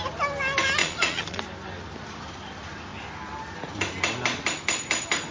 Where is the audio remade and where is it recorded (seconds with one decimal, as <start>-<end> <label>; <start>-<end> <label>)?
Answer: 0.0-0.8 recorded; 0.8-1.4 remade; 1.4-5.3 recorded